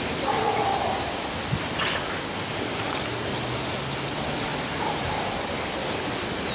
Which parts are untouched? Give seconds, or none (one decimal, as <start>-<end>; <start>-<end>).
0.0-3.3; 3.8-4.5; 5.3-6.5